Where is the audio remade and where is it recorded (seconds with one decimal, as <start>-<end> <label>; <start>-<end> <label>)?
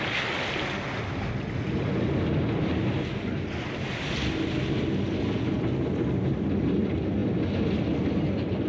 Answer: 0.0-8.7 recorded